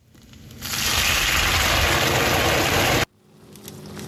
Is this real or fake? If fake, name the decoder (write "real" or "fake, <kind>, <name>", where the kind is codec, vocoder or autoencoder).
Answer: real